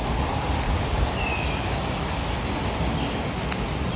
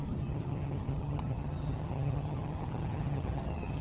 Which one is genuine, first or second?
first